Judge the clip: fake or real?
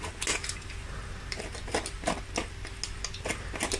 real